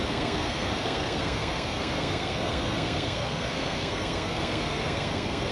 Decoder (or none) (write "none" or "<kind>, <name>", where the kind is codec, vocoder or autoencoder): codec, SNAC